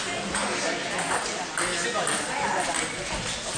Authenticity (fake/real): real